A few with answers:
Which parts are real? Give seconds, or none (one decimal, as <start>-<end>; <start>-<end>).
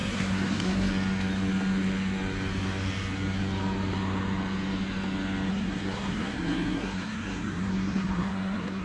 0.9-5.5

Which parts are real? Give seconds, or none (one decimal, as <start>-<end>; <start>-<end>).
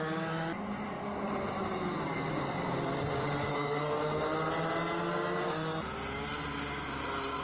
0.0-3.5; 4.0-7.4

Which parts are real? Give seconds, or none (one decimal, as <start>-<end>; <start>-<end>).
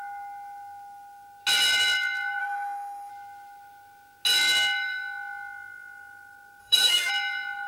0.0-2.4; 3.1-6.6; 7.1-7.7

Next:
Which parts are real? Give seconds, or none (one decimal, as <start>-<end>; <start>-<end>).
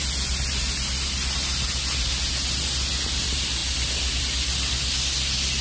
0.0-5.6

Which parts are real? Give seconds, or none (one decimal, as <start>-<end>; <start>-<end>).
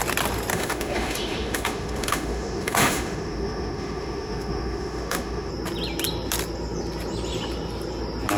0.0-0.5; 5.5-8.4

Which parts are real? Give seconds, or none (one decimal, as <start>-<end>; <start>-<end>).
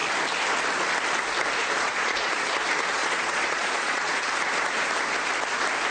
0.0-1.6; 2.3-3.0; 4.2-5.9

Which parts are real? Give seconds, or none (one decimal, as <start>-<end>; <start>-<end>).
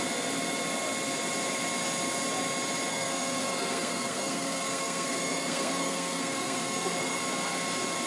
0.0-2.9; 7.2-8.1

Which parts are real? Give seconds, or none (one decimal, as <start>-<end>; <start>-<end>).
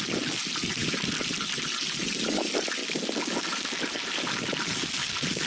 0.0-5.5